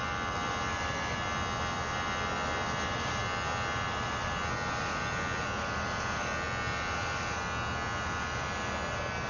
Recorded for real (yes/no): yes